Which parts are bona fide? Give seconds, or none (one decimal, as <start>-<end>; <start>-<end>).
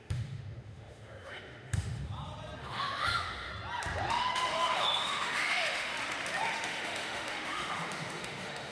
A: 2.1-2.6; 3.5-4.1; 5.9-6.5